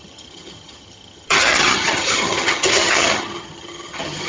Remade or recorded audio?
remade